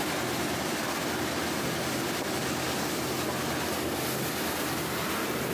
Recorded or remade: recorded